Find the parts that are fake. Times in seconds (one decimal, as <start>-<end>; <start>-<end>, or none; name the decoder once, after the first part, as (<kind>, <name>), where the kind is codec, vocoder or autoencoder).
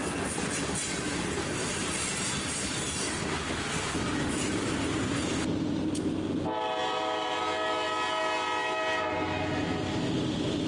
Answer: 6.8-7.4 (vocoder, BigVGAN v2)